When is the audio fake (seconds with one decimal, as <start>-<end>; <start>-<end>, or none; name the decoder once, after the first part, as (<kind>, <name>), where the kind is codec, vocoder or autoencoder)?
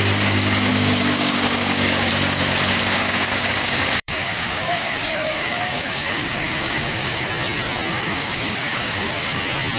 0.7-2.1 (codec, DAC); 3.0-7.3; 7.9-9.4